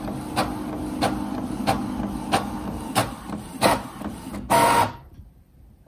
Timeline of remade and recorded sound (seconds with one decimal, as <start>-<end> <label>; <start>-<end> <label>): 0.0-3.0 recorded; 3.0-3.9 remade; 3.9-5.9 recorded